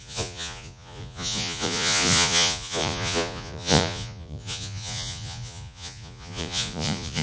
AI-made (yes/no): yes